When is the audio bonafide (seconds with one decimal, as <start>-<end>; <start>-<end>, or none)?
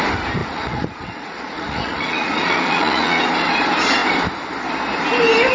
0.0-0.4; 3.2-5.5